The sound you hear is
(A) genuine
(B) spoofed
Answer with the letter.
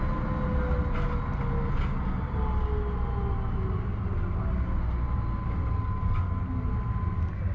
A